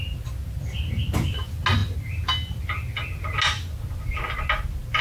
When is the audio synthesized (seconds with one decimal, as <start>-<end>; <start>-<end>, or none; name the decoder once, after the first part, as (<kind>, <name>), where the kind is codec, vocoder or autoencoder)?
none